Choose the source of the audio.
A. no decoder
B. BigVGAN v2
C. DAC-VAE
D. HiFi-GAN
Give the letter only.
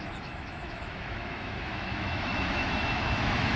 C